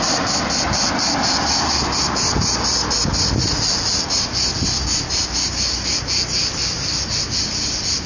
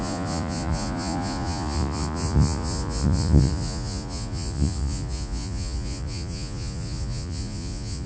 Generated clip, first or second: second